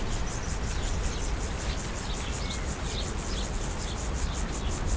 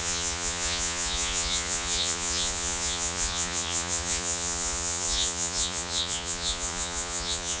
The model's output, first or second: second